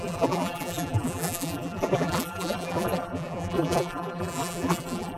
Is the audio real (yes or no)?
no